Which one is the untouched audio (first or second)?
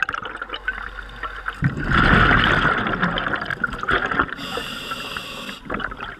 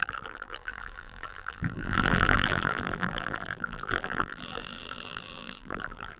first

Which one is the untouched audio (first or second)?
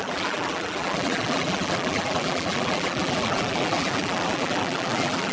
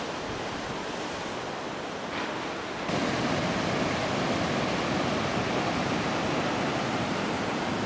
second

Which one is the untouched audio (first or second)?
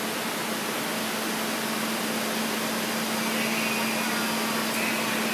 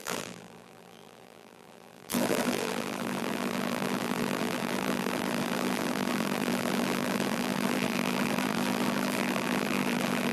first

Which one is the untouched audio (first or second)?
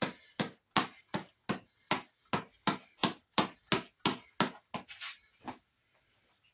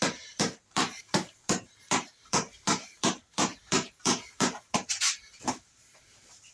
first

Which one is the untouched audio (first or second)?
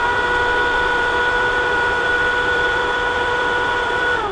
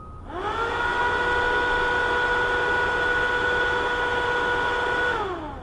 second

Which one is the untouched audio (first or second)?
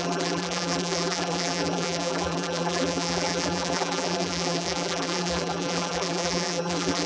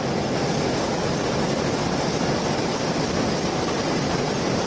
second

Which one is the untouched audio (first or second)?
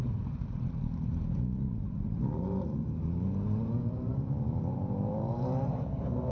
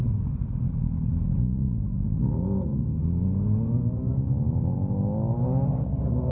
second